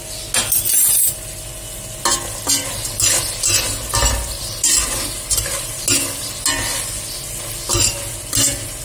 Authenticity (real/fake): real